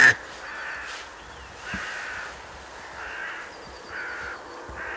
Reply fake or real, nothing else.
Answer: real